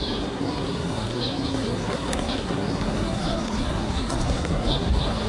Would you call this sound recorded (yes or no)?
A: no